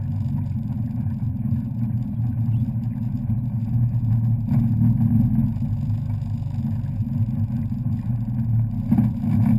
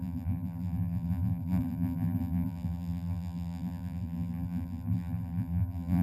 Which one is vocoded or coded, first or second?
second